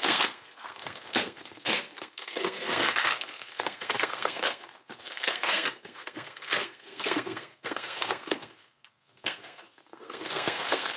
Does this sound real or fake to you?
fake